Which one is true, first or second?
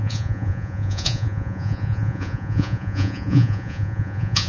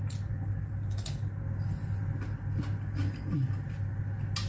second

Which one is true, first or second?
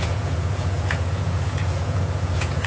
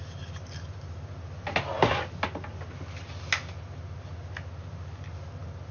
second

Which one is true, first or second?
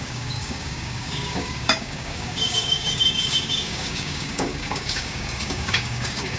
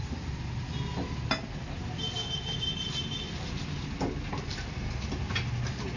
second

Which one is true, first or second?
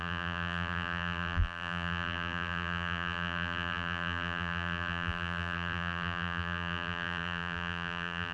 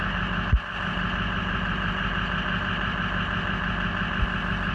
second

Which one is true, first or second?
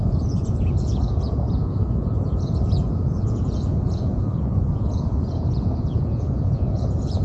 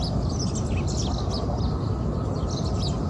second